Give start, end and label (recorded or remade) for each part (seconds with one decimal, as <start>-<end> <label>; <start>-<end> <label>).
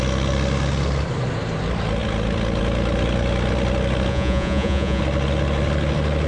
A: 0.0-4.1 recorded; 4.1-5.0 remade; 5.0-6.3 recorded